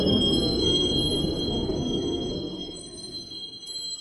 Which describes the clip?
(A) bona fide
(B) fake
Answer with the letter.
B